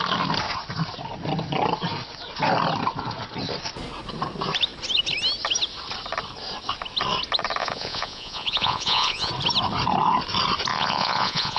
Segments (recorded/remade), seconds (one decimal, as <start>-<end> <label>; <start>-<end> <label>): 0.0-7.6 recorded; 7.6-9.3 remade; 9.3-10.7 recorded; 10.7-11.6 remade